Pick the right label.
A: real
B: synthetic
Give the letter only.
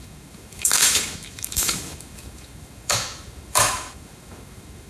B